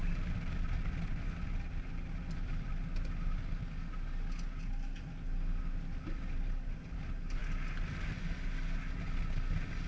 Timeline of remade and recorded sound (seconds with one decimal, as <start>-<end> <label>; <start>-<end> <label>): 0.0-9.9 recorded